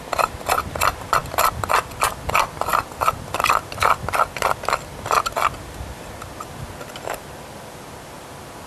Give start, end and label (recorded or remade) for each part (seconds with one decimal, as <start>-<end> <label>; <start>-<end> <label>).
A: 0.0-8.7 recorded